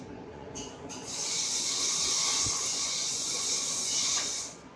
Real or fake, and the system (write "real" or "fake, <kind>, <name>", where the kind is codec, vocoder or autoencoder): fake, vocoder, Vocos